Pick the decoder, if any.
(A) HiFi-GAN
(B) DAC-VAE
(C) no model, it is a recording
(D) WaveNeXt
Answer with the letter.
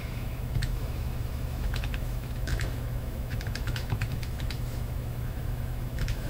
B